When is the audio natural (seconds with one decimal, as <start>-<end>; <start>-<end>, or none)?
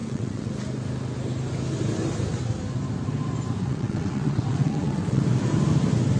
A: 0.5-3.6; 5.2-6.2